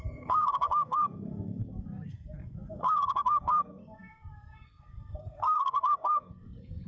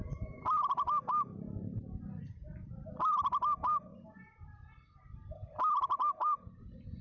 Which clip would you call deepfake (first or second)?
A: first